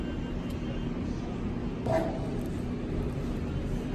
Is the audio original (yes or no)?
yes